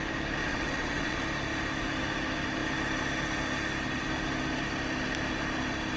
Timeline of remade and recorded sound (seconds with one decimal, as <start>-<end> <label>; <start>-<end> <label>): 0.0-0.4 recorded; 0.4-1.2 remade; 1.2-6.0 recorded